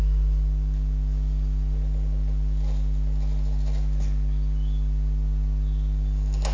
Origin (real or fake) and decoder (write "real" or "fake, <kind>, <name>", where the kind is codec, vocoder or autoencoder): real